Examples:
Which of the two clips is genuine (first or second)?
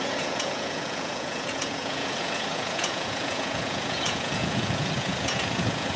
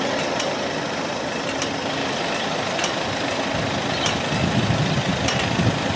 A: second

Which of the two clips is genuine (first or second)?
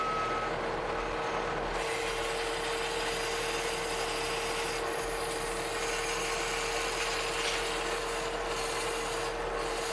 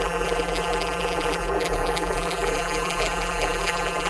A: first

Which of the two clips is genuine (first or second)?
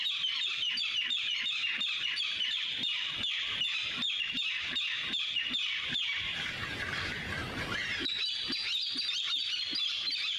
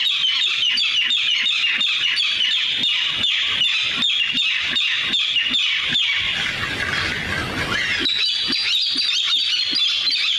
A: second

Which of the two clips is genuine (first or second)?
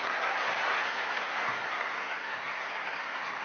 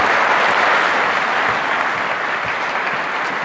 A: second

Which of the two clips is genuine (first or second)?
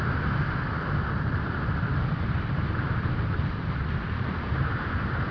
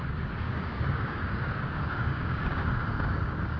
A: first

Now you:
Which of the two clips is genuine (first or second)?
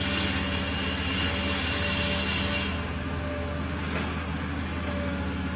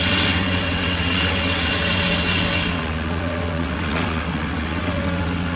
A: first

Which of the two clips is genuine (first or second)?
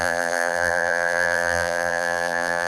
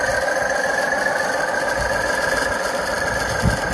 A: second